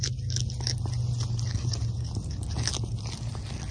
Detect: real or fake real